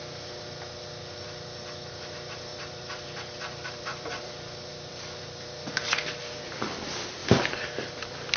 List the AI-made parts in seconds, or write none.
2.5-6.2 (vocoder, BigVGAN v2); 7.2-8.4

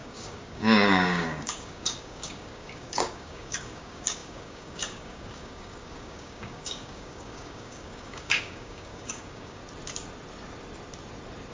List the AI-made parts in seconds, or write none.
0.0-9.6 (codec, DAC)